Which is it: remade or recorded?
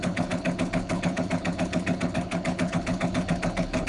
remade